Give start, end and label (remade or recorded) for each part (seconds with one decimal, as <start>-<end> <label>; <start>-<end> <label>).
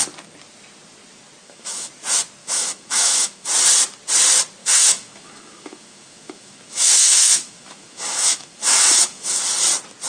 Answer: 0.0-1.4 recorded; 1.4-1.9 remade; 1.9-2.4 recorded; 2.4-3.5 remade; 3.5-4.6 recorded; 4.6-9.4 remade; 9.4-10.1 recorded